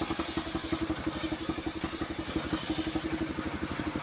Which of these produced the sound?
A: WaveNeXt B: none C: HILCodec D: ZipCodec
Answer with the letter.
B